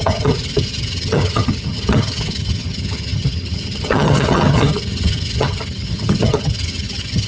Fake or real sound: fake